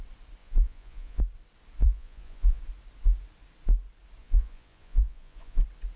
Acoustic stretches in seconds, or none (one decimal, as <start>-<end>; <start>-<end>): 0.0-0.4; 1.2-1.8; 2.6-4.2; 5.6-6.0